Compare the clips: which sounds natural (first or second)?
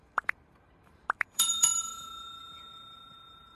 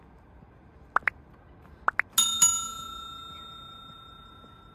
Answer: second